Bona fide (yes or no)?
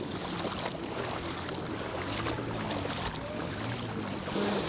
yes